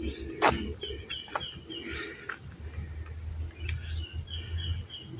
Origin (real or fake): real